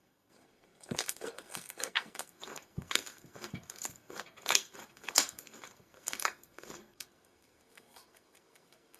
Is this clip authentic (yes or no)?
no